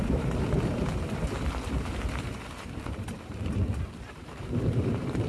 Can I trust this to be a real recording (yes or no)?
no